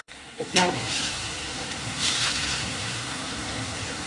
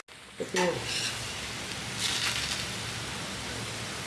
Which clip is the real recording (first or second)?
second